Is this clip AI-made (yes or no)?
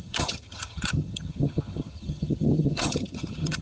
yes